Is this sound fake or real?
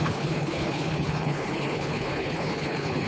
fake